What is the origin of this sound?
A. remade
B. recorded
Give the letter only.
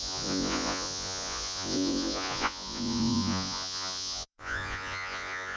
A